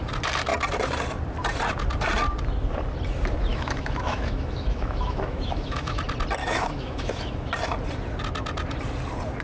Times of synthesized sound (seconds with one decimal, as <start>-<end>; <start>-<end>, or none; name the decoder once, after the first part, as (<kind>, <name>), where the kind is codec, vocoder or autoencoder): 3.5-6.0 (autoencoder, DAC-VAE); 6.4-7.5